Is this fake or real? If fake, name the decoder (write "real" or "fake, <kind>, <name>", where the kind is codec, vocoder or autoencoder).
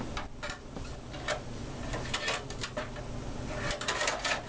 real